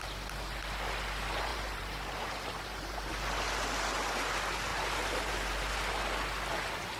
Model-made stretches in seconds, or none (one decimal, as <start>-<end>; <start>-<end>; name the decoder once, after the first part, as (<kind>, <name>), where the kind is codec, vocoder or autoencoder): 1.5-3.1 (vocoder, BigVGAN v2); 4.7-5.7